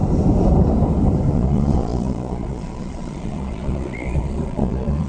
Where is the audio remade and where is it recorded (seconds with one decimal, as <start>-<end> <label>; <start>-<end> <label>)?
0.0-1.3 recorded; 1.3-5.1 remade